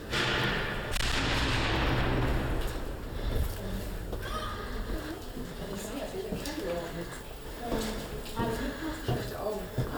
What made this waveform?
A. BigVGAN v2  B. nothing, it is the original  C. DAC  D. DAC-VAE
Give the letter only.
B